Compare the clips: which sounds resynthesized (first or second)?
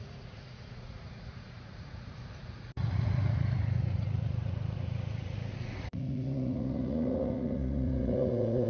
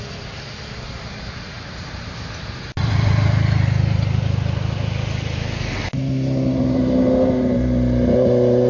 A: first